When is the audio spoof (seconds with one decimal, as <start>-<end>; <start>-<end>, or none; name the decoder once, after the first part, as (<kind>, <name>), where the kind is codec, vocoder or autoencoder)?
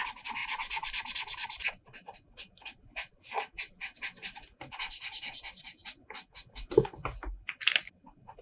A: none